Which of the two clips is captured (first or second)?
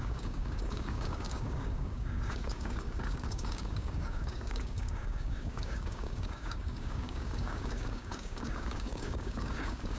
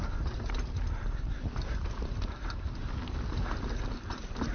second